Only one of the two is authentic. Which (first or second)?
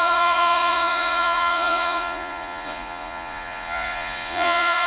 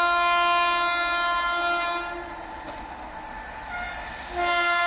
second